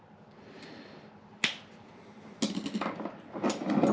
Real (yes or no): yes